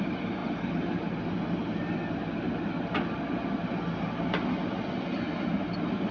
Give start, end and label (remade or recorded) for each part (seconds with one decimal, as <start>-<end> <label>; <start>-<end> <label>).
0.0-6.1 recorded